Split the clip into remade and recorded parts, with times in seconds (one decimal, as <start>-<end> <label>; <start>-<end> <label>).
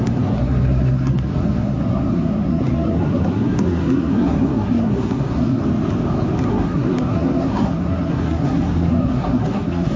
0.0-5.6 remade; 5.6-6.4 recorded; 6.4-10.0 remade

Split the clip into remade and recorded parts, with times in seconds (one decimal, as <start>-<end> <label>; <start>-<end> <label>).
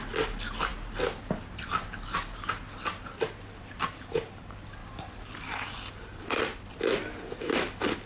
0.0-8.1 recorded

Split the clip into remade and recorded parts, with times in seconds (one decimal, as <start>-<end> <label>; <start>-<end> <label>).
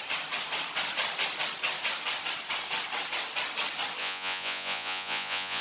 0.0-4.0 recorded; 4.0-5.6 remade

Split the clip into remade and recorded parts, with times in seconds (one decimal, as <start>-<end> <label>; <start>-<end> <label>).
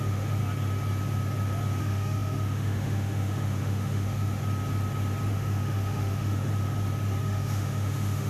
0.0-0.4 remade; 0.4-1.8 recorded; 1.8-4.4 remade; 4.4-5.3 recorded; 5.3-6.5 remade; 6.5-7.2 recorded; 7.2-8.3 remade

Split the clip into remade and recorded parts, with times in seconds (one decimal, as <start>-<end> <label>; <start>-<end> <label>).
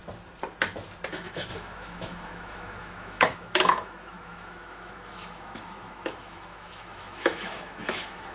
0.0-1.1 recorded; 1.1-8.3 remade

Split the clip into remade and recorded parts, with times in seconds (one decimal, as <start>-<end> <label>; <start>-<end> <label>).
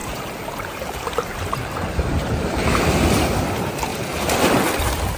0.0-2.9 remade; 2.9-3.9 recorded; 3.9-4.6 remade; 4.6-5.2 recorded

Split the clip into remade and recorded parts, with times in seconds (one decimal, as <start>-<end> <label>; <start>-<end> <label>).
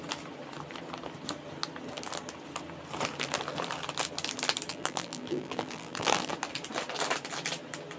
0.0-4.7 recorded; 4.7-6.3 remade; 6.3-8.0 recorded